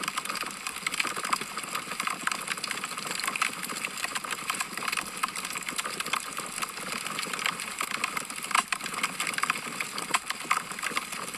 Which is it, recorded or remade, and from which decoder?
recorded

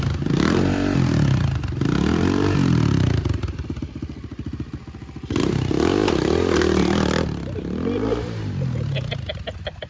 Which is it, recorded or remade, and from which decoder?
recorded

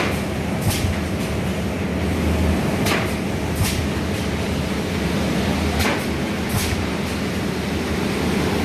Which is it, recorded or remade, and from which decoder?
recorded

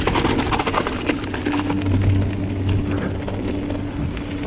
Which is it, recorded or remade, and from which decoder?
recorded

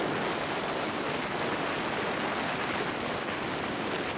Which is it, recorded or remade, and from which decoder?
recorded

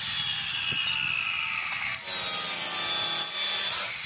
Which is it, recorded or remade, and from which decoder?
recorded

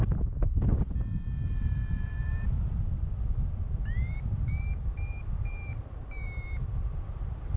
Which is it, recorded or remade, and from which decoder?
remade, vocoder, BigVGAN v2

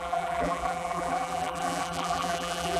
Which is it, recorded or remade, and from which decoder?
remade, vocoder, BigVGAN v2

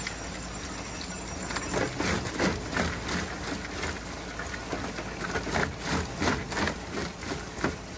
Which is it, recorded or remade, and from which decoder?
recorded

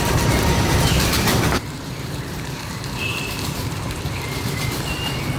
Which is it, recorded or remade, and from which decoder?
remade, vocoder, BigVGAN v2